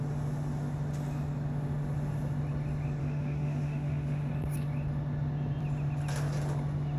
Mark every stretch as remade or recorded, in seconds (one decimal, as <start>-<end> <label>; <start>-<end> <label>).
0.0-3.0 recorded; 3.0-4.3 remade; 4.3-7.0 recorded